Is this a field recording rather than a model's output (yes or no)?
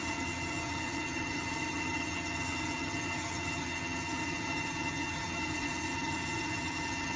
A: no